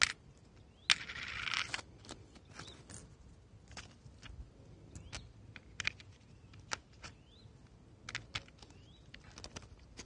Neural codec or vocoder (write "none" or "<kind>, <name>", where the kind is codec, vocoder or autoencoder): none